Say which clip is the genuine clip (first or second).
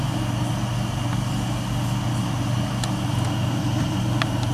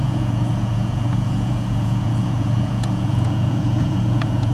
first